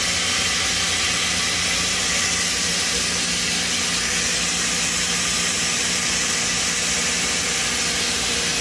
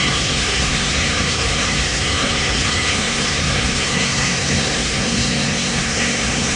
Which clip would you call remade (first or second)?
second